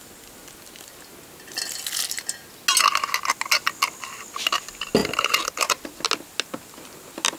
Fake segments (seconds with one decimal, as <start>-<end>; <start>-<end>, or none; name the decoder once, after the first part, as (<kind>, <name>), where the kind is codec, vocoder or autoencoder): 5.0-5.7 (vocoder, BigVGAN v2)